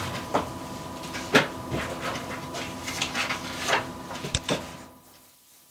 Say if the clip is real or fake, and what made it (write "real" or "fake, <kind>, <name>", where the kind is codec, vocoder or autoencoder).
real